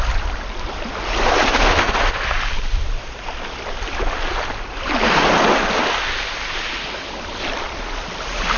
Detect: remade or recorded recorded